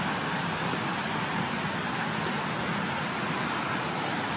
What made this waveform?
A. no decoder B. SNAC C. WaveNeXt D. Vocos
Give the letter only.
A